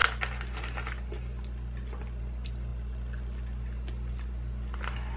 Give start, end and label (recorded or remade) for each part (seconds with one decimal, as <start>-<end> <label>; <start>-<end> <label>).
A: 0.0-5.2 recorded